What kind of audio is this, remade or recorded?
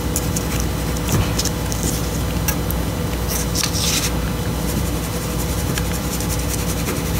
recorded